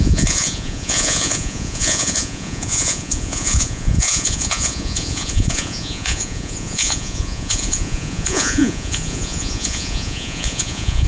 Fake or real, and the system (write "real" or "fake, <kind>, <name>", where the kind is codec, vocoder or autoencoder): fake, vocoder, Vocos